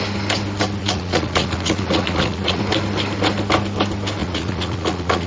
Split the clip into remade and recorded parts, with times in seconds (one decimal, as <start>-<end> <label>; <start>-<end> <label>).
0.0-0.8 recorded; 0.8-2.6 remade; 2.6-4.2 recorded; 4.2-5.3 remade